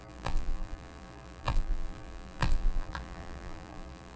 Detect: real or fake fake